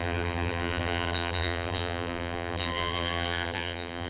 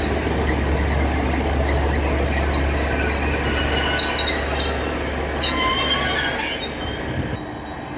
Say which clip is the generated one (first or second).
first